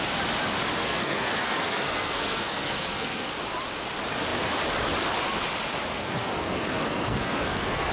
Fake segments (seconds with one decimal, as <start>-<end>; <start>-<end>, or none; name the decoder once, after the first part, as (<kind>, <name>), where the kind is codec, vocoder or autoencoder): 0.8-3.3 (codec, SNAC); 5.9-7.9